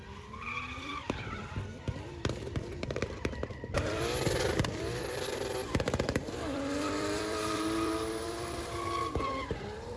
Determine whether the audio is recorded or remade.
remade